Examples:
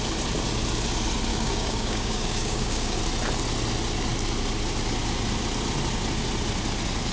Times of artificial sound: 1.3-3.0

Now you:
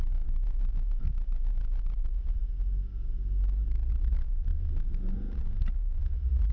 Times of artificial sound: 0.0-2.4; 3.9-6.5

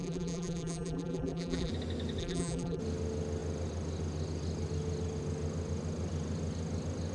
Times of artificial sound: 0.0-1.7; 2.2-2.8